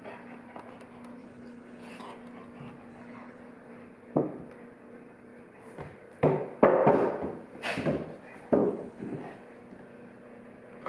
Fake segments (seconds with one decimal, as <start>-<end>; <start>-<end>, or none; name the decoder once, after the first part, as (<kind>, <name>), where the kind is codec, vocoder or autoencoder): 1.2-1.9 (codec, HILCodec); 2.9-3.4; 8.6-9.2